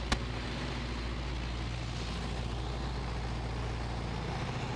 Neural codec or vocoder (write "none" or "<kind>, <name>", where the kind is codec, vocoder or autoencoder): none